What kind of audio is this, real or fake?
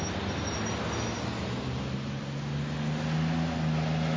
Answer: real